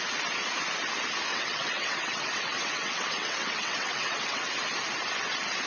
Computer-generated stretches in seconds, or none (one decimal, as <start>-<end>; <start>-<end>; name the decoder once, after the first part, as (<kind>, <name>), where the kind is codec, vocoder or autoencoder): 1.3-4.5 (vocoder, WaveNeXt)